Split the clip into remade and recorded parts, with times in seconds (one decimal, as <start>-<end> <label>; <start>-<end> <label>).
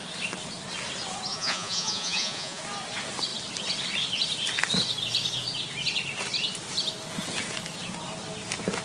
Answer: 0.0-1.3 recorded; 1.3-2.6 remade; 2.6-8.8 recorded